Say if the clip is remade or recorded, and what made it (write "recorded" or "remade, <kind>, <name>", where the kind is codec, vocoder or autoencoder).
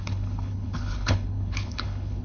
remade, codec, HILCodec